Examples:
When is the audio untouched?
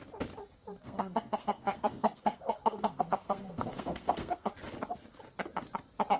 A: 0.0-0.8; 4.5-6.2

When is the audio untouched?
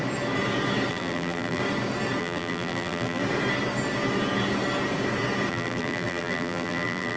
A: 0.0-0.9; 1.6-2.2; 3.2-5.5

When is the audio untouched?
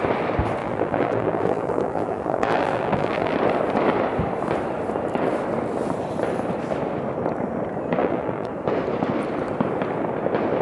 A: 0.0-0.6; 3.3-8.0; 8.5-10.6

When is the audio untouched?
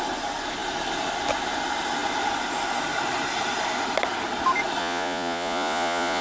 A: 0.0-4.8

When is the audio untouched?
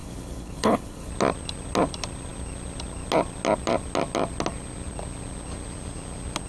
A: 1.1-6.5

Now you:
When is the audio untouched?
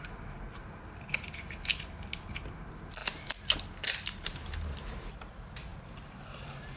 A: 0.0-3.0; 5.1-5.7